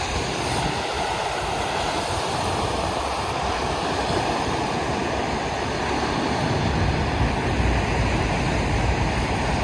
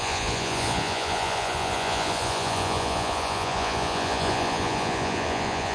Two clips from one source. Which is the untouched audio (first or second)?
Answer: first